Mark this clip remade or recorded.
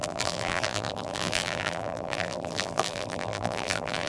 remade